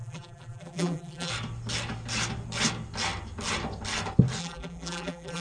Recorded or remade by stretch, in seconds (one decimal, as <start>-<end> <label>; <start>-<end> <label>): 0.0-1.3 remade; 1.3-4.4 recorded; 4.4-5.4 remade